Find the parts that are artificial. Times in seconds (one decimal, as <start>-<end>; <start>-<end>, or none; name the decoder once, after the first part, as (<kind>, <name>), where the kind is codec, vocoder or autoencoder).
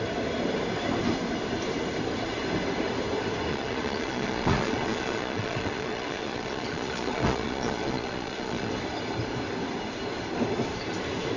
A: 3.5-8.7 (vocoder, Vocos)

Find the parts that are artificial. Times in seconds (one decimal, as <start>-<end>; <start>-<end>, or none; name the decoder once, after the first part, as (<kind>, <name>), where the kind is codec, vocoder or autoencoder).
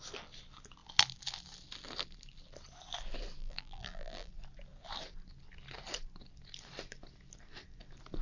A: 3.4-4.3 (vocoder, BigVGAN v2)